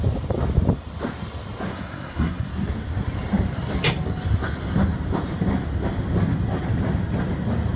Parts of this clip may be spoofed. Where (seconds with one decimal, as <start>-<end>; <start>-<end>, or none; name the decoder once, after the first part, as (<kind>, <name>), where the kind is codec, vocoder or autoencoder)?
1.7-2.5 (codec, SNAC)